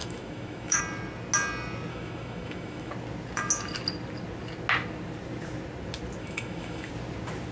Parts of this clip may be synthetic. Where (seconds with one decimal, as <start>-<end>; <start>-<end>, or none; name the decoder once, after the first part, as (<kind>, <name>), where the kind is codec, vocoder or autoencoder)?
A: 0.0-0.8 (autoencoder, DAC-VAE); 1.9-2.9; 6.2-6.9